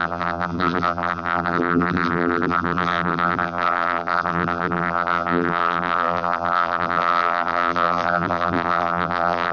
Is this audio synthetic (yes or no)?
yes